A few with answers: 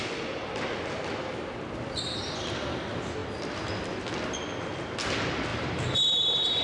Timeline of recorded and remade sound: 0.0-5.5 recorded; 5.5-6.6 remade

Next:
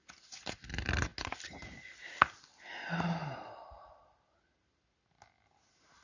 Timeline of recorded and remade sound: 0.0-6.0 recorded